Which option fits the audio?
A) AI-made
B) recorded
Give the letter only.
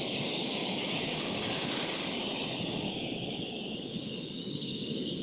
A